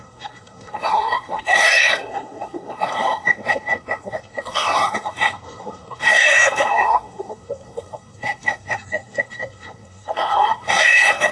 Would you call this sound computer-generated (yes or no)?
yes